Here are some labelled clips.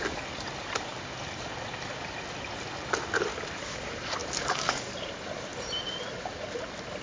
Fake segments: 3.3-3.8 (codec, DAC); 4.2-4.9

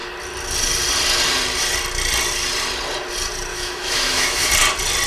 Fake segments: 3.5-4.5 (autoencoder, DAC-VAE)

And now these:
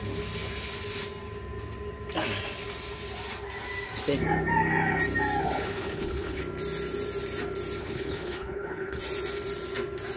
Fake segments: 5.4-6.4 (codec, HILCodec); 7.8-9.0